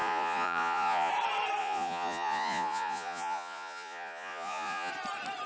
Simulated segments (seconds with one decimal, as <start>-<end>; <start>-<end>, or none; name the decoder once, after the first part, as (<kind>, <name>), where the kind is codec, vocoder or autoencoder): 0.0-1.1 (vocoder, Vocos); 1.6-4.9